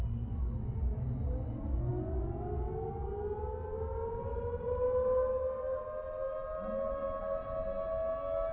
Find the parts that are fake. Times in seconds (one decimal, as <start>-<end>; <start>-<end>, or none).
none